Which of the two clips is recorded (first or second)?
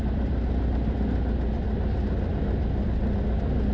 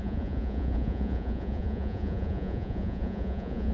first